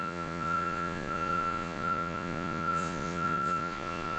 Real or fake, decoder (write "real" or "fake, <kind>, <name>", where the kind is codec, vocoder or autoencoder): fake, vocoder, Vocos